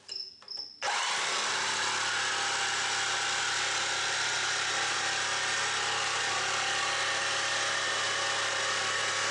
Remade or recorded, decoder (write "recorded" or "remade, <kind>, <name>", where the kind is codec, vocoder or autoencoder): recorded